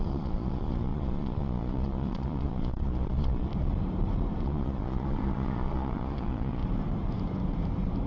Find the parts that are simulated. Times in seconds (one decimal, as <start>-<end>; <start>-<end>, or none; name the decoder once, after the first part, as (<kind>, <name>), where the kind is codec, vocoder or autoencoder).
0.0-3.5 (vocoder, Vocos); 4.4-6.6